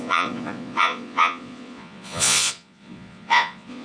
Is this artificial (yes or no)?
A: yes